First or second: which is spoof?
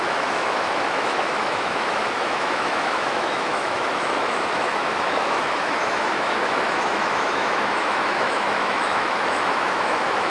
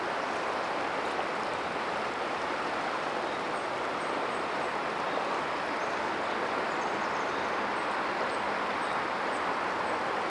first